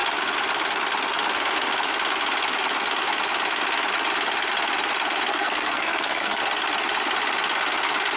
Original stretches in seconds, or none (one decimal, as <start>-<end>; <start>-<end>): 0.0-5.3; 6.4-8.2